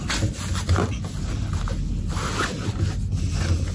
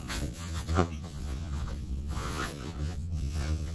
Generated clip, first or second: second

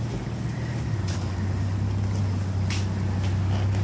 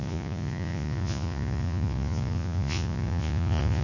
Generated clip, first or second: second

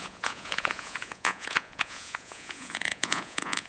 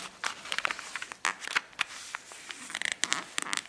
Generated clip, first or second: first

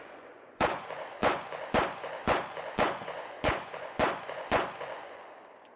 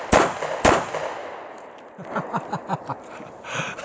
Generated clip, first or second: first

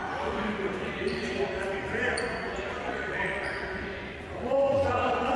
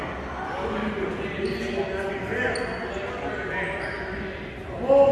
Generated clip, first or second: first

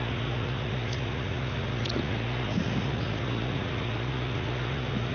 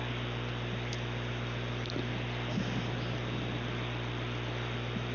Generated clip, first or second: first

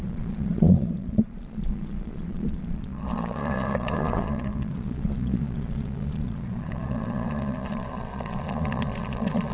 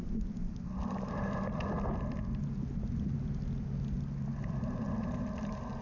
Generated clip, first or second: first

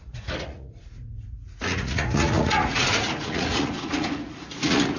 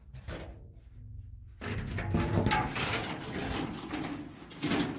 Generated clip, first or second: first